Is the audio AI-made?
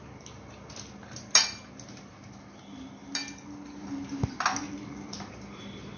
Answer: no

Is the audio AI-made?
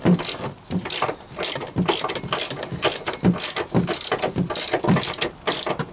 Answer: no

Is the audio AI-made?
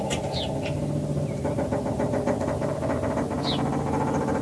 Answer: no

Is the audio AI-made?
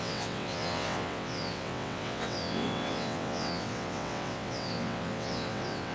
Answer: yes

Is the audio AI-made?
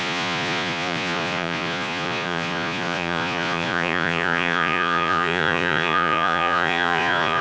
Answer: yes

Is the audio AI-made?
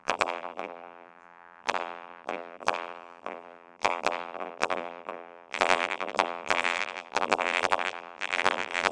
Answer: yes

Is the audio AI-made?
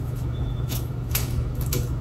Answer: yes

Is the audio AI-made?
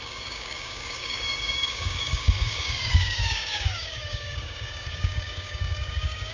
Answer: yes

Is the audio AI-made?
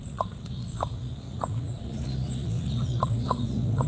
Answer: yes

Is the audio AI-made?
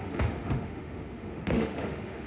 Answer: yes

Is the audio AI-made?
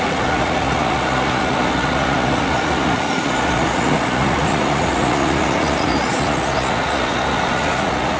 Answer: yes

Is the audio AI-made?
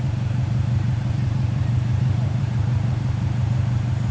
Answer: yes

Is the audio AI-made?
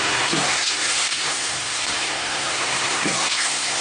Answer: yes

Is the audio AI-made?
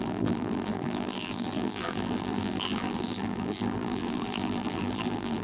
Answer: yes